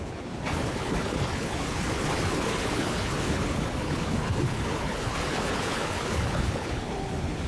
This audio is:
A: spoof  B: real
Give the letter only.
A